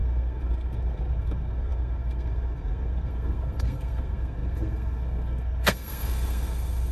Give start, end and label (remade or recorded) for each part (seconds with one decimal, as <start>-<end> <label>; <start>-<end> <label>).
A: 0.0-6.9 remade